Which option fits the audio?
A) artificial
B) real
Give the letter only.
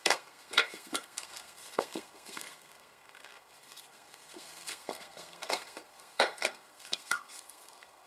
A